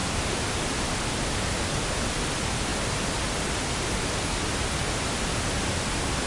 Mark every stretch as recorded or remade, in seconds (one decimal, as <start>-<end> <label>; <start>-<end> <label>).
0.0-1.0 remade; 1.0-6.3 recorded